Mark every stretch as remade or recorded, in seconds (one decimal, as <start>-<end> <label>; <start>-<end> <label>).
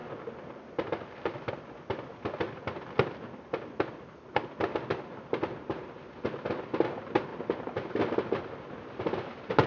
0.0-9.7 recorded